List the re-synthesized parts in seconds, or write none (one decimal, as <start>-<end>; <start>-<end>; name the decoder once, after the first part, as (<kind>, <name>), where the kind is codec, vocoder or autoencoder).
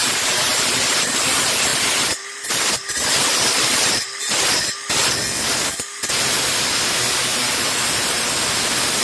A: 0.0-0.8 (vocoder, BigVGAN v2); 7.3-8.6